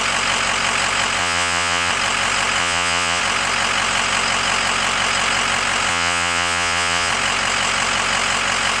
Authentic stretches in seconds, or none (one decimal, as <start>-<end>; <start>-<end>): 0.0-1.2; 1.9-2.6; 3.2-5.9; 7.1-8.8